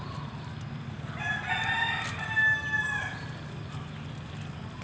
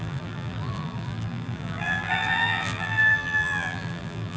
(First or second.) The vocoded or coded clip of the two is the second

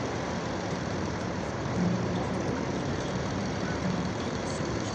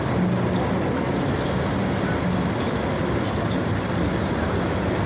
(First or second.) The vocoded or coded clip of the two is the first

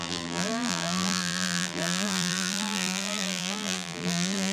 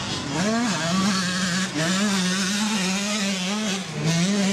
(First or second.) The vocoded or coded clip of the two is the first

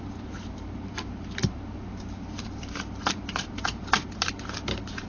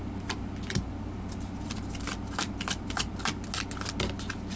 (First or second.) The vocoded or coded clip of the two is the first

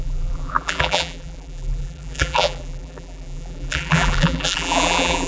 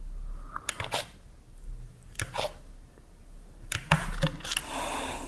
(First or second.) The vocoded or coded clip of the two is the first